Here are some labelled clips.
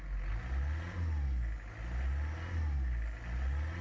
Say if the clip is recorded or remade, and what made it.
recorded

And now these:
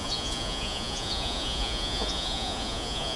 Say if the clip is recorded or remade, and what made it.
remade, vocoder, Vocos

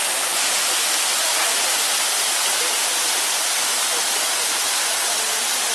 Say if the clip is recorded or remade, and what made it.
recorded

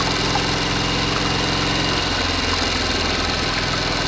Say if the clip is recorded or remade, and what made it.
recorded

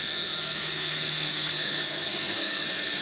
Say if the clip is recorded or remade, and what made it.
remade, codec, SNAC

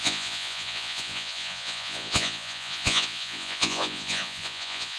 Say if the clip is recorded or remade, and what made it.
remade, vocoder, Vocos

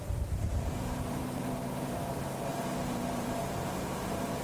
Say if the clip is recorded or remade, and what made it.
remade, vocoder, BigVGAN v2